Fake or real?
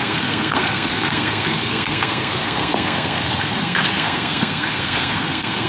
fake